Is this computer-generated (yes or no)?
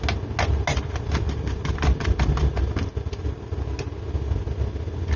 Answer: no